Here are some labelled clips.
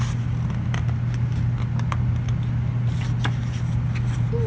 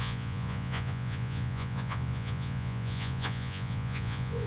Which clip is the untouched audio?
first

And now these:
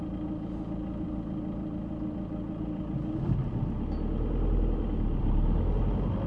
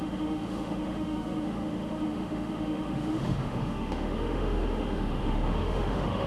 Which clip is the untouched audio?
first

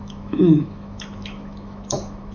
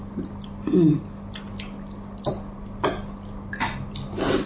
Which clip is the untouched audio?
second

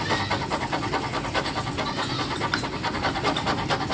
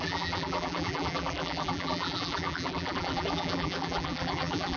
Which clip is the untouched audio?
first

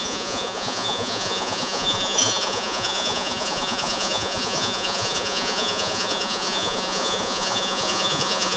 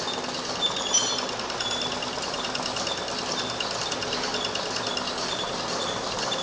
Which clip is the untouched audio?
second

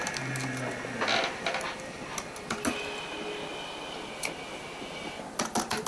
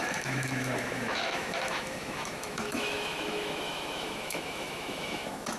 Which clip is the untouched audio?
first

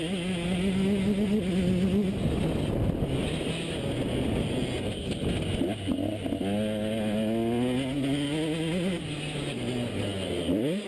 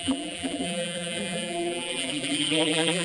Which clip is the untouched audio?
first